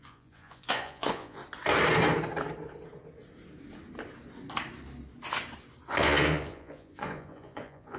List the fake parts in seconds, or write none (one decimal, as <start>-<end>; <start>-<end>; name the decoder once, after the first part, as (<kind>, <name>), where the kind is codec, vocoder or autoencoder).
0.0-1.4 (vocoder, Vocos); 5.9-8.0